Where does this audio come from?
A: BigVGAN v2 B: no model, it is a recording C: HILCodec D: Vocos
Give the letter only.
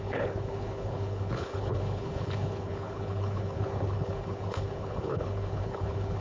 C